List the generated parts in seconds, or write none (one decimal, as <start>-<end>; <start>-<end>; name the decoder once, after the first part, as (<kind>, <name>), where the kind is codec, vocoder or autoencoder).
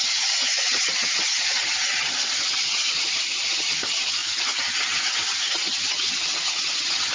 0.0-7.1 (vocoder, HiFi-GAN)